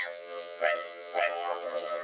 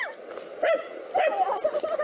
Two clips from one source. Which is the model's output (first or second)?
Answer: first